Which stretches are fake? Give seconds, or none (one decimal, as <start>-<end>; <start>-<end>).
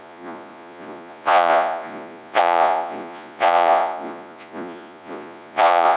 0.0-6.0